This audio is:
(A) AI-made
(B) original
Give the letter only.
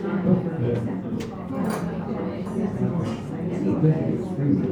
B